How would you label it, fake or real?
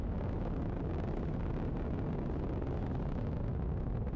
real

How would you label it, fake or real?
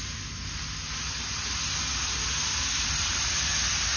real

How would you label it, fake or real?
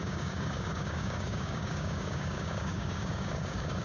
fake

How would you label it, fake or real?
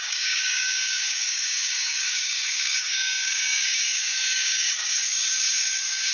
fake